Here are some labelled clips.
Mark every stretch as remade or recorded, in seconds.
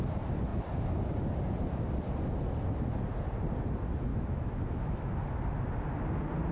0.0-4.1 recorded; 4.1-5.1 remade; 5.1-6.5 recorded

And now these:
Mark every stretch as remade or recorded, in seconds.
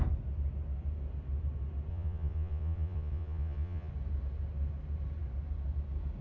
0.0-1.9 recorded; 1.9-3.9 remade; 3.9-6.2 recorded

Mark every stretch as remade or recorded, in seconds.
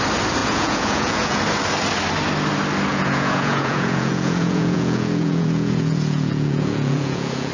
0.0-0.4 recorded; 0.4-1.4 remade; 1.4-2.9 recorded; 2.9-7.5 remade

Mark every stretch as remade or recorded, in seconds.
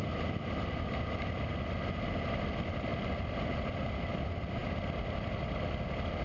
0.0-6.2 recorded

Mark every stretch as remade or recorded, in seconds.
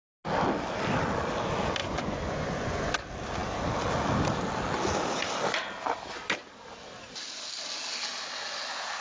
0.0-1.8 recorded; 1.8-2.9 remade; 2.9-9.0 recorded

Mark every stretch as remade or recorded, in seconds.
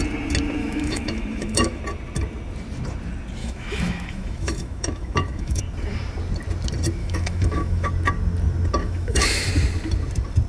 0.0-0.6 recorded; 0.6-1.8 remade; 1.8-3.4 recorded; 3.4-5.6 remade; 5.6-7.0 recorded; 7.0-7.9 remade; 7.9-8.8 recorded; 8.8-9.5 remade; 9.5-10.5 recorded